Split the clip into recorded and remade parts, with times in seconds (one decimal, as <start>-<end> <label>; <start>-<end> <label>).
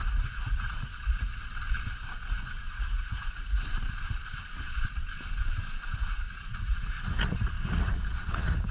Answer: 0.0-1.4 remade; 1.4-1.9 recorded; 1.9-3.7 remade; 3.7-6.1 recorded; 6.1-8.7 remade